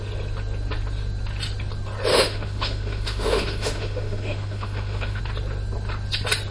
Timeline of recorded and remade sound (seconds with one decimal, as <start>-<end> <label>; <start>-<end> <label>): 0.0-2.1 recorded; 2.1-5.2 remade; 5.2-6.5 recorded